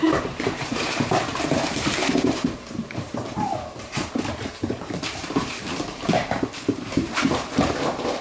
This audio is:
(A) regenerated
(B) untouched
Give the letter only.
A